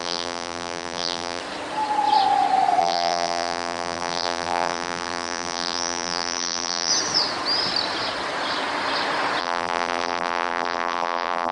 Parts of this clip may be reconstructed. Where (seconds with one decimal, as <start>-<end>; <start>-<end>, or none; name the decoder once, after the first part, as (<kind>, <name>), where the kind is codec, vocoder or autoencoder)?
0.0-1.4 (vocoder, BigVGAN v2); 2.8-6.9; 9.4-11.5